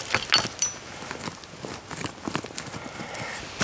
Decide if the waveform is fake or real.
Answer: real